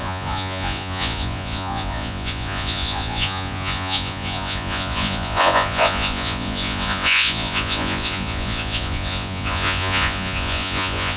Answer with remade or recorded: remade